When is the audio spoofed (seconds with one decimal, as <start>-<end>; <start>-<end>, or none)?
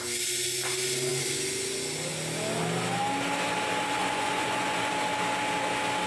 4.0-4.9